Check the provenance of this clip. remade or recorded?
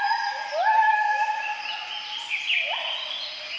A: recorded